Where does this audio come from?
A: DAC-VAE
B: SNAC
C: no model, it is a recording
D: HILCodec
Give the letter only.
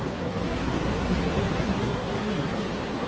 B